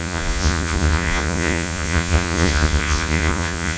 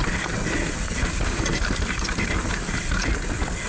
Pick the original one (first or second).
second